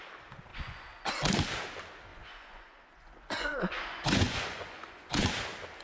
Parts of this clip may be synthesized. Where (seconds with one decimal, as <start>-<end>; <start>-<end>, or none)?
0.5-1.1; 2.1-5.2